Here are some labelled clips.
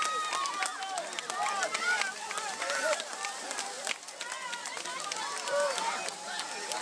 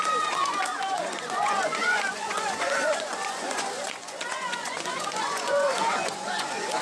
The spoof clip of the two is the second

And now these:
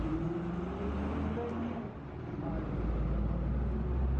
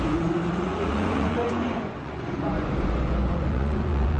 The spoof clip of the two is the second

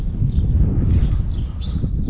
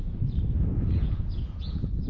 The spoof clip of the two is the second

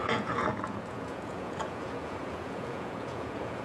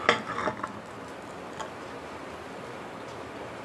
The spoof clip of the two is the first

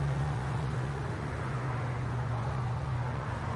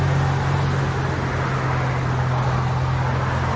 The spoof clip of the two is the first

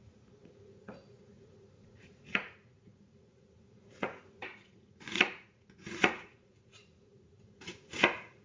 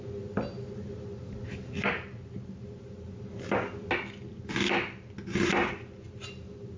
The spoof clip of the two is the first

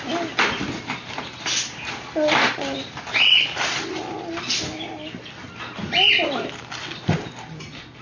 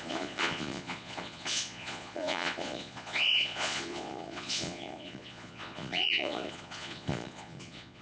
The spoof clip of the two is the second